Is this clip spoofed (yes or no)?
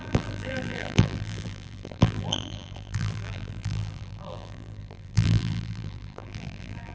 yes